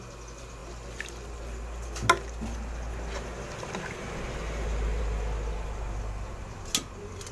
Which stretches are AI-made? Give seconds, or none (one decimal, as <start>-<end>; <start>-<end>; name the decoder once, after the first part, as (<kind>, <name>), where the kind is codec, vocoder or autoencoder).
none